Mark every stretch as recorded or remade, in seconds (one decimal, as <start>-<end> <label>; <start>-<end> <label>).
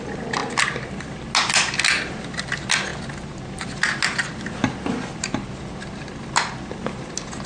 0.0-7.5 recorded